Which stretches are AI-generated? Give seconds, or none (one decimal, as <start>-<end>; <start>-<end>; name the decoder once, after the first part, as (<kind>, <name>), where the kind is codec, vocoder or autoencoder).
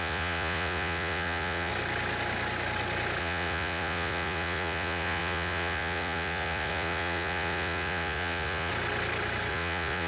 0.0-1.7 (vocoder, Vocos); 3.2-8.7; 9.5-10.1